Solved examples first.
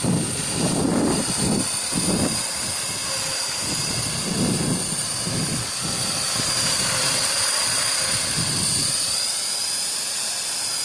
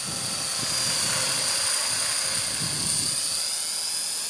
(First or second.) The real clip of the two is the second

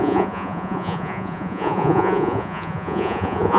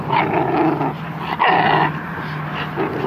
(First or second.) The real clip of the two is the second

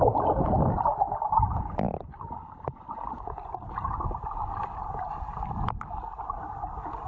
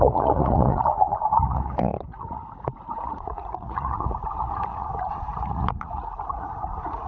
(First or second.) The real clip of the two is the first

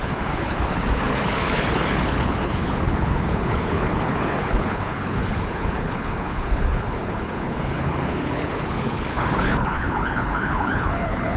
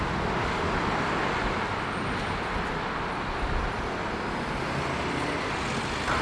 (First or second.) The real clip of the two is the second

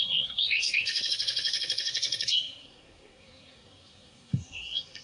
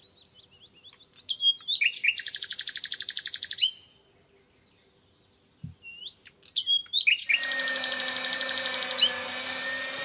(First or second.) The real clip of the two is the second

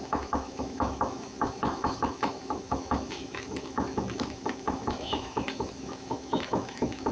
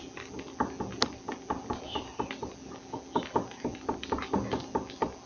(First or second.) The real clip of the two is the second